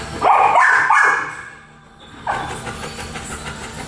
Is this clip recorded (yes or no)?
yes